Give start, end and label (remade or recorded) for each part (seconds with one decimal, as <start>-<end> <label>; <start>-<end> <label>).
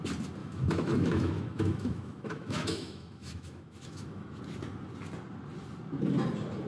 0.0-0.4 recorded; 0.4-4.4 remade; 4.4-6.7 recorded